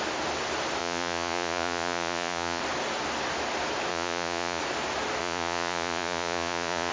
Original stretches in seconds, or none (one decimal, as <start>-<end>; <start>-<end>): 0.0-0.8; 2.6-3.9; 4.6-5.2